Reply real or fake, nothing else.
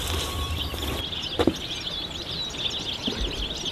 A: real